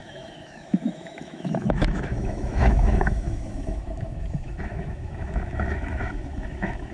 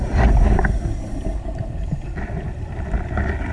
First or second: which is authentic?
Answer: second